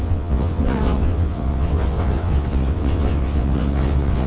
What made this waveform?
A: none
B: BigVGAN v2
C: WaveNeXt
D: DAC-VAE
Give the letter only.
C